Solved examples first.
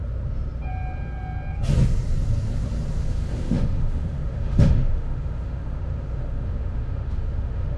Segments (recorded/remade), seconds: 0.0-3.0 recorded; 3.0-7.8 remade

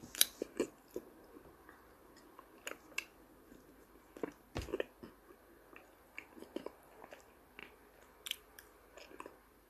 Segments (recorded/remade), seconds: 0.0-9.7 recorded